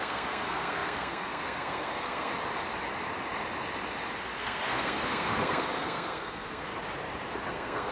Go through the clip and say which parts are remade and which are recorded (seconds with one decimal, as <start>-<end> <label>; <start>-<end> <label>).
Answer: 0.0-2.3 remade; 2.3-4.4 recorded; 4.4-6.7 remade; 6.7-7.5 recorded; 7.5-7.9 remade